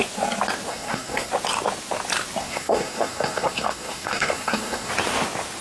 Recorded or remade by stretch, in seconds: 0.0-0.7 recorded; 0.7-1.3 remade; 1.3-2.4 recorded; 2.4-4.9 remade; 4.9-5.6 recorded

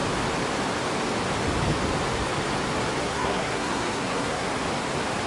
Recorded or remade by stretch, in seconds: 0.0-3.0 recorded; 3.0-4.5 remade; 4.5-5.3 recorded